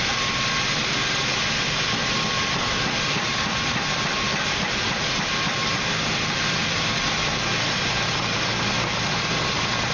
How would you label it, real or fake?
fake